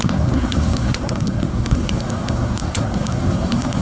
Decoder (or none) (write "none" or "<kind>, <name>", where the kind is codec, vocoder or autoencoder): codec, SNAC